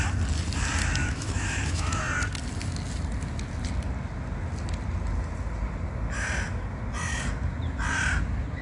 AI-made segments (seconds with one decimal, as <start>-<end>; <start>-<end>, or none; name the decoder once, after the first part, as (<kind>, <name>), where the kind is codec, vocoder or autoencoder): 1.0-2.0 (autoencoder, DAC-VAE)